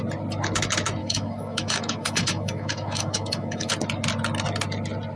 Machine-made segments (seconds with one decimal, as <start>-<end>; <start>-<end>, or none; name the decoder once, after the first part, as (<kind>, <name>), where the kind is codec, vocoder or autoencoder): 1.0-3.7 (autoencoder, DAC-VAE)